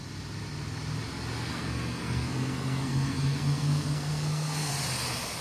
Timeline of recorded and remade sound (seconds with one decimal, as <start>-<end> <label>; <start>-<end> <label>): 0.0-1.5 recorded; 1.5-4.7 remade; 4.7-5.4 recorded